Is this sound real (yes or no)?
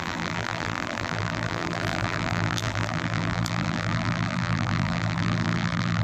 no